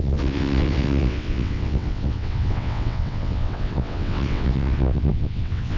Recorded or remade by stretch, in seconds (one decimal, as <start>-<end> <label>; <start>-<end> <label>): 0.0-5.8 remade